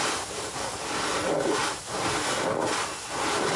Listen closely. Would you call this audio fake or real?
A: real